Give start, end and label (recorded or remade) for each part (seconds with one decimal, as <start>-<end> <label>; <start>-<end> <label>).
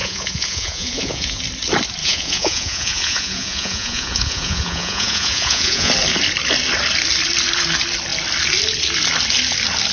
0.0-1.4 remade; 1.4-2.0 recorded; 2.0-5.9 remade; 5.9-9.9 recorded